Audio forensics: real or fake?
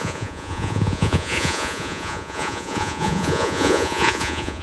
fake